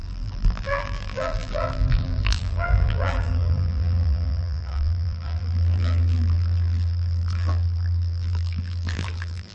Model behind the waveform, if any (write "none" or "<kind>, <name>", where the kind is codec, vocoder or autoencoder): vocoder, BigVGAN v2